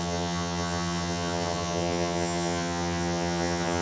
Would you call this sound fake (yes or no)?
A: yes